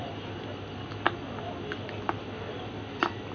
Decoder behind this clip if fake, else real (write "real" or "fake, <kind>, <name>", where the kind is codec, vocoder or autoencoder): real